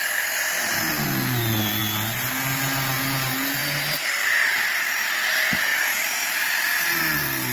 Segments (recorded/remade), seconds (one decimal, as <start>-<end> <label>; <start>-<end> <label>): 0.0-7.5 recorded